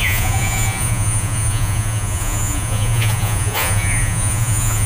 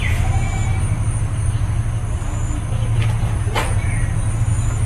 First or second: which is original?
second